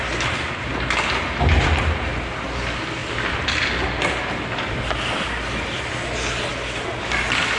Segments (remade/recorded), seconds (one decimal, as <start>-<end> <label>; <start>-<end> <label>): 0.0-7.6 recorded